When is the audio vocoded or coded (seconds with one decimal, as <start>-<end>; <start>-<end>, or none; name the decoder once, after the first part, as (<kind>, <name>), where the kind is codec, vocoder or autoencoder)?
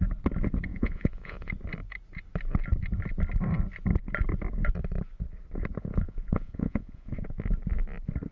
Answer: 0.7-1.5 (vocoder, Vocos); 5.8-7.1